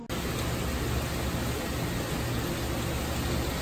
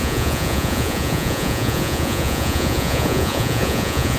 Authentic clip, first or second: first